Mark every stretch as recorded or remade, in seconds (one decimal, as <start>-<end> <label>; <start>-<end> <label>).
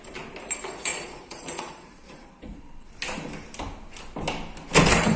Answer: 0.0-0.9 recorded; 0.9-2.9 remade; 2.9-5.2 recorded